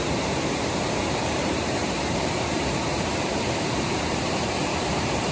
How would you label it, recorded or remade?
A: remade